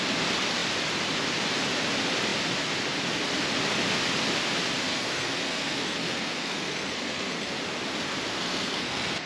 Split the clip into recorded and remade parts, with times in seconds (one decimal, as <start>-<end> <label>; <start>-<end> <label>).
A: 0.0-4.9 recorded; 4.9-7.6 remade; 7.6-8.3 recorded; 8.3-9.3 remade